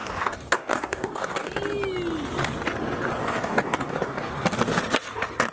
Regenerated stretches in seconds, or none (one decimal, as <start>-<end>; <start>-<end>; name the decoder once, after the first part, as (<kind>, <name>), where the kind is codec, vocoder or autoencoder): 0.0-1.5 (codec, DAC); 3.2-4.3